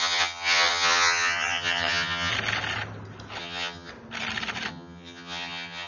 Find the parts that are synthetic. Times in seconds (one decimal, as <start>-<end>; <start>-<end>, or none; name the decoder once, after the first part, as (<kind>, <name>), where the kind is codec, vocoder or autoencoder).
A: 0.0-2.3 (vocoder, HiFi-GAN); 3.4-3.9; 4.7-5.9